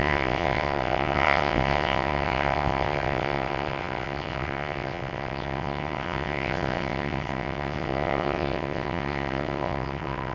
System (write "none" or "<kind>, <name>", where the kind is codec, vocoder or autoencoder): vocoder, WaveNeXt